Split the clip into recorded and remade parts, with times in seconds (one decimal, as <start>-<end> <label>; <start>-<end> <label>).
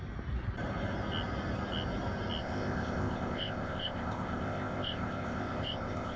0.0-2.4 recorded; 2.4-6.2 remade